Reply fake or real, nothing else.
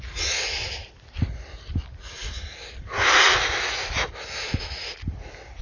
real